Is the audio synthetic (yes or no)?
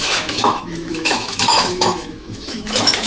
yes